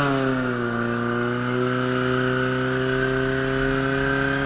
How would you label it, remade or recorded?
recorded